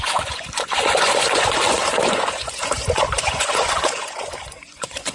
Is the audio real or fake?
fake